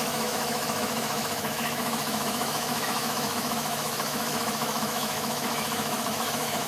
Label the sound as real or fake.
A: fake